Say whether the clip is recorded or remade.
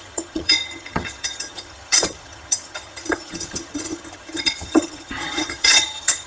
remade